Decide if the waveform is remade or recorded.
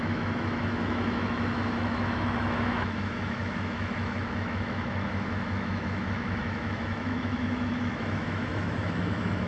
remade